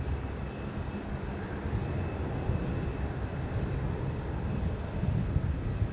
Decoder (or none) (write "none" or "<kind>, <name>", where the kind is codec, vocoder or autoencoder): none